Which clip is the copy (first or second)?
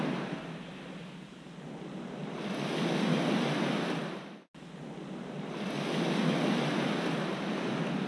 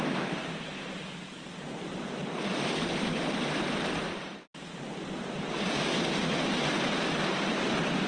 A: second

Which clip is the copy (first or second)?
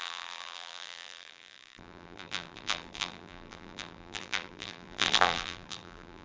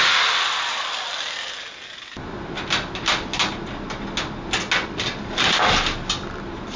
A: first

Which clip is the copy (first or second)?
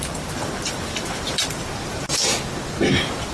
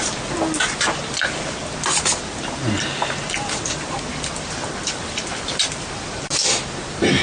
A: first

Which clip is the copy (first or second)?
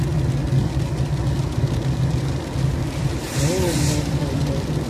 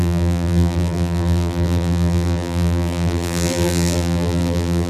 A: second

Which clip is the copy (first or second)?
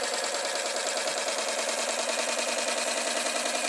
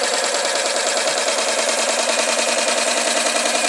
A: second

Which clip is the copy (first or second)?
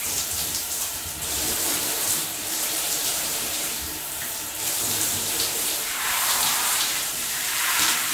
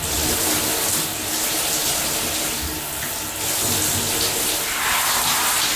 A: first